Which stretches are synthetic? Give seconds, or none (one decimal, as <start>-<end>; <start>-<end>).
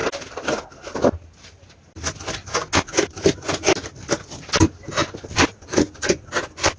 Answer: 5.0-6.8